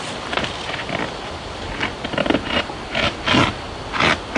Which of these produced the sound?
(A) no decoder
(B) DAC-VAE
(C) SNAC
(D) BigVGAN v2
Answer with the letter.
A